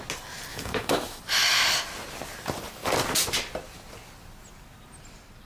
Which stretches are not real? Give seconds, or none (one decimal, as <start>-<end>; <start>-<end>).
0.5-1.2